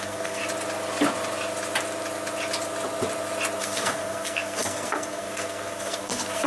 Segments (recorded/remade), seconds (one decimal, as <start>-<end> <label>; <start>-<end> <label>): 0.0-0.4 remade; 0.4-3.6 recorded; 3.6-6.5 remade